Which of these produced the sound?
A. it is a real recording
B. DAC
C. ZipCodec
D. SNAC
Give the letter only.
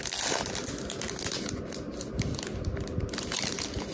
A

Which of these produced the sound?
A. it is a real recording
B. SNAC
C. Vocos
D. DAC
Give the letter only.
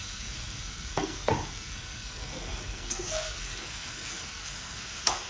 B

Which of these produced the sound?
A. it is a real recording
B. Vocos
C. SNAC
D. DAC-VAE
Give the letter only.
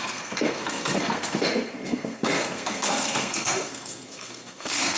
C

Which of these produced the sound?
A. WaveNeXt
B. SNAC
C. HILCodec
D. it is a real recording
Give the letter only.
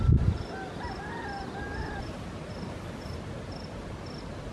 D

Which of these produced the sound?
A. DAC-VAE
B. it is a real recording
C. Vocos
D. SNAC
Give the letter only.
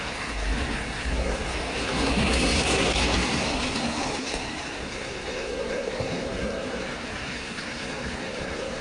D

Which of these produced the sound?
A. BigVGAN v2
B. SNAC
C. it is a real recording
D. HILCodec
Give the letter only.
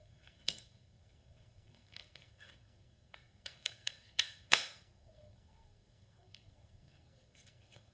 B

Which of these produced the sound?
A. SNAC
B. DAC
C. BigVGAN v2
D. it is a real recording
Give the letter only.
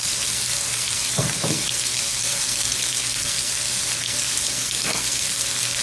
A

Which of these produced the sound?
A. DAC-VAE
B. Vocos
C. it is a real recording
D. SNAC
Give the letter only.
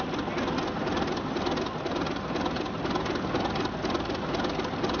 C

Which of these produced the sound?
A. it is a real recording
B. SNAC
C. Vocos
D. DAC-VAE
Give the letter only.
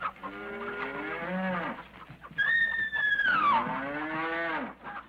A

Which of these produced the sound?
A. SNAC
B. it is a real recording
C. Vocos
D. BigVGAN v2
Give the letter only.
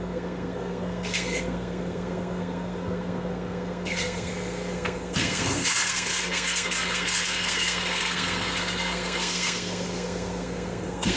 A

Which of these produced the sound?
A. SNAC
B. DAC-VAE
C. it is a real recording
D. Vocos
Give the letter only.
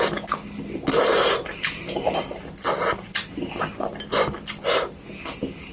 C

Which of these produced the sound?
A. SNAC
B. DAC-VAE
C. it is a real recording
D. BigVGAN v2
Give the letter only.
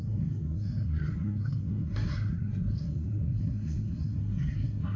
A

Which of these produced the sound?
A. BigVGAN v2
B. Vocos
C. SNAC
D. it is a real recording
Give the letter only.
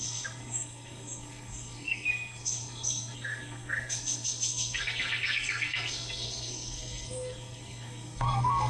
C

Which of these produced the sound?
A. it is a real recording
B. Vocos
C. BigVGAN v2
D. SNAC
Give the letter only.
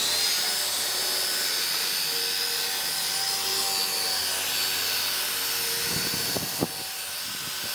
A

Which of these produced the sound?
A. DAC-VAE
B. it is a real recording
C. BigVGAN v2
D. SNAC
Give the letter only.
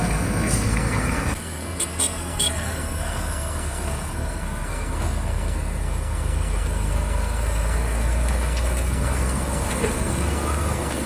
D